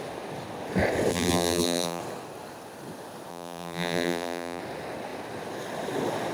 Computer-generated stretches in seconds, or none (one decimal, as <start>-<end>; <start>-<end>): 1.1-2.0; 3.3-4.6